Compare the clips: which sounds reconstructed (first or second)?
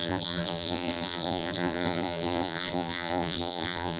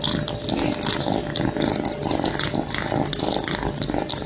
first